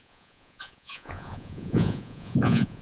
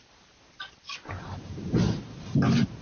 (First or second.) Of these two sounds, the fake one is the first